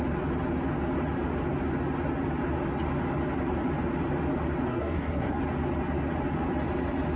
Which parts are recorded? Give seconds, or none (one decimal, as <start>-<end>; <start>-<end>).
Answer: 0.0-4.7; 5.4-7.2